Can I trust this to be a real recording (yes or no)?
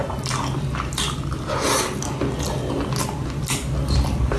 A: yes